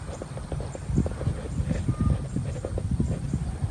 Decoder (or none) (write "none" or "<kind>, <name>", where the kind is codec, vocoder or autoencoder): none